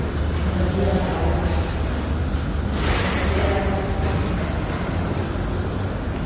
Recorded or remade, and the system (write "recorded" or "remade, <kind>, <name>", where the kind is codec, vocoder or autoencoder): recorded